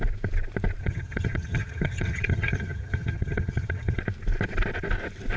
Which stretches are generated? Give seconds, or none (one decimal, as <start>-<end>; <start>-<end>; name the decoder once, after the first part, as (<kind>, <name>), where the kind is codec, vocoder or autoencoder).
0.8-4.0 (vocoder, HiFi-GAN)